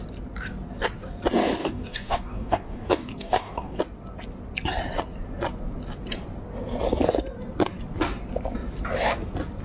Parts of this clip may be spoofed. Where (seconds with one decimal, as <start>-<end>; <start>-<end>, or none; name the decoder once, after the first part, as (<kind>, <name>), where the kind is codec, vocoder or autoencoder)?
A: 1.6-3.8 (codec, DAC)